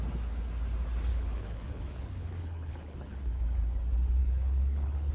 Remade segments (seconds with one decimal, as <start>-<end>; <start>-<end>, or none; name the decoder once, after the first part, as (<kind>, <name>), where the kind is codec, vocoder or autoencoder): 1.1-3.3 (codec, HILCodec); 4.2-5.1